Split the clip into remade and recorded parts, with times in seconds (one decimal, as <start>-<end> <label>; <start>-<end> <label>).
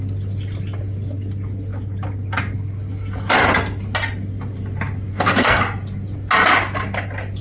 0.0-5.1 recorded; 5.1-5.6 remade; 5.6-7.4 recorded